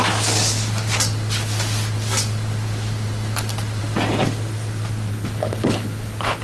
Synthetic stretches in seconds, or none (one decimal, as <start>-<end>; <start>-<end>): 5.1-6.4